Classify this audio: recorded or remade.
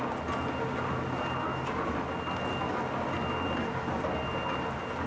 recorded